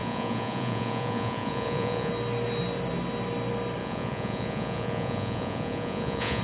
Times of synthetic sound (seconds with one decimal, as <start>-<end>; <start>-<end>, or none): 0.0-2.1; 3.8-6.4

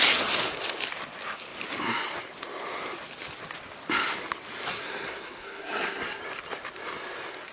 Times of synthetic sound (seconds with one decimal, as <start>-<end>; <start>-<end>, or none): 4.7-6.2